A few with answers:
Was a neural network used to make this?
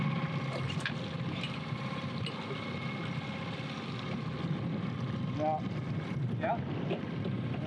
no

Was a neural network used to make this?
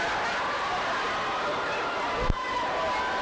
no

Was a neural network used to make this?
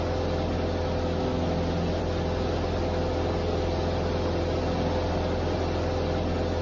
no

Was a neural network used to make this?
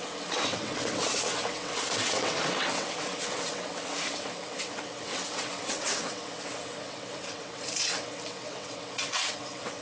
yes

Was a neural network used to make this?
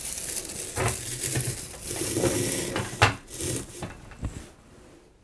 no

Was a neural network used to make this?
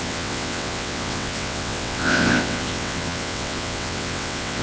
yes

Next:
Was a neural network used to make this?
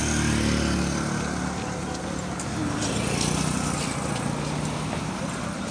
no